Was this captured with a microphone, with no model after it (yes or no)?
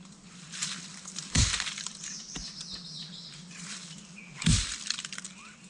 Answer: no